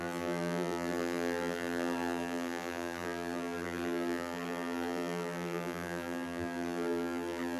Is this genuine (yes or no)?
no